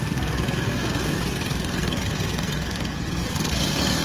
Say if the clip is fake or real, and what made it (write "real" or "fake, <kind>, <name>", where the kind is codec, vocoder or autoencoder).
fake, codec, SNAC